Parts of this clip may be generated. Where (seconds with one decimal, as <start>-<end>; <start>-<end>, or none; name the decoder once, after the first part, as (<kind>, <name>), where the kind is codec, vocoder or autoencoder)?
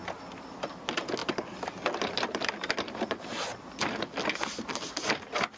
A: none